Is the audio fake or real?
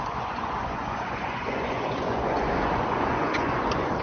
fake